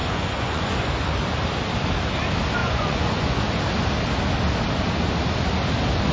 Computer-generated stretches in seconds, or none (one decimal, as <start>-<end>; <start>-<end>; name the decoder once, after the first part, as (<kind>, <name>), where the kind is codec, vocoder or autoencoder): 0.0-0.9 (vocoder, Vocos); 2.6-3.4